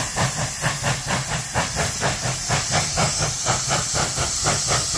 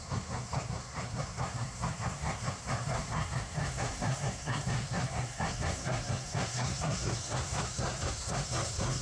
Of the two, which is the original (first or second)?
first